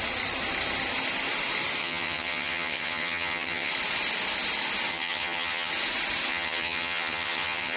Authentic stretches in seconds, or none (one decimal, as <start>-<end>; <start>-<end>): 0.0-1.8; 3.7-4.9; 5.7-6.3